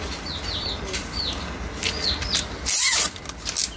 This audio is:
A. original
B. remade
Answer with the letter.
A